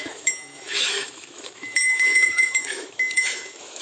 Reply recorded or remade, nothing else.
remade